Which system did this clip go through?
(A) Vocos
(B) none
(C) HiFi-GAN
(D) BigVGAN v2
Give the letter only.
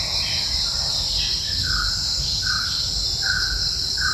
B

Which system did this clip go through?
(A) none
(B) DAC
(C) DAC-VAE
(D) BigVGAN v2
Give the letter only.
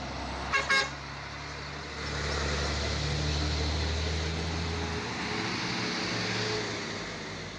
A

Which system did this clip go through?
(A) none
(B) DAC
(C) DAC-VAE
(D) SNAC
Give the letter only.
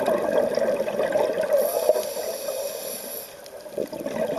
A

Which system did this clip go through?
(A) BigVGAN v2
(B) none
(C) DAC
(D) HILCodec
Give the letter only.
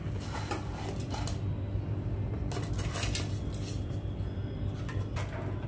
B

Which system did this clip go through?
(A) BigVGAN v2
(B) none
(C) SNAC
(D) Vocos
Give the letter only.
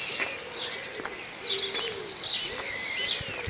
B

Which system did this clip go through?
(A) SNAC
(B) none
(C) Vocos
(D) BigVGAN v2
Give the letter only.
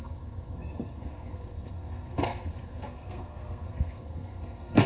A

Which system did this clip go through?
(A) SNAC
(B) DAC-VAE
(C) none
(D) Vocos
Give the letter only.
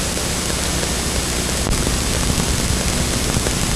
C